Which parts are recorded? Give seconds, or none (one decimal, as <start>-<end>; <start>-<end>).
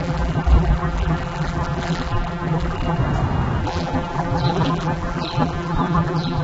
3.0-3.6